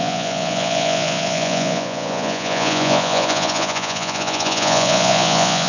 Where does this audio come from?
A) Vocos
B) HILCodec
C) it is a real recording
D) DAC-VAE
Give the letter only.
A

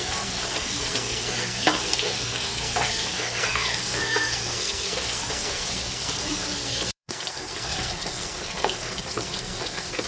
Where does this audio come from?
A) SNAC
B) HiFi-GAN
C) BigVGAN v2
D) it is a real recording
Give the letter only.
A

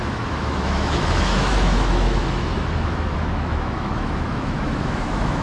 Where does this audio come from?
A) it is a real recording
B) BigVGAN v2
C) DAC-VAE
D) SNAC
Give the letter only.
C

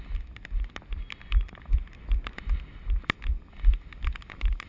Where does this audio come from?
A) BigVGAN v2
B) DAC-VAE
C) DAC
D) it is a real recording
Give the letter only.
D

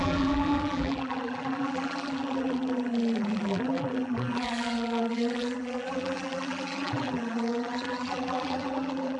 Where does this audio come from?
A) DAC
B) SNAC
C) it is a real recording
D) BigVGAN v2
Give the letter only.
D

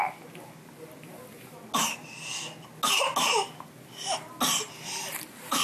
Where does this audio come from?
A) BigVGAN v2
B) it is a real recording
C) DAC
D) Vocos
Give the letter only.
B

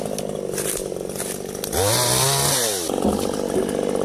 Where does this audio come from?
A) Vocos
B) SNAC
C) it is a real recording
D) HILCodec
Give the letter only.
C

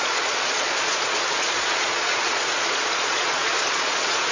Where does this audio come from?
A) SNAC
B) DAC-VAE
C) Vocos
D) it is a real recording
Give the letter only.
C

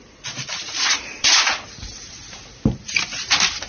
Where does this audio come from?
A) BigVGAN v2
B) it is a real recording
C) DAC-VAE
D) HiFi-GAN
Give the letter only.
A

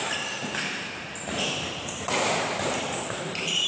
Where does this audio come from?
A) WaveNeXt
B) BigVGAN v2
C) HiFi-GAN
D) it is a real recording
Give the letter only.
B